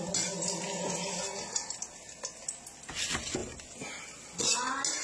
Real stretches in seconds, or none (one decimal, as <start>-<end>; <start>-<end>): 0.0-5.0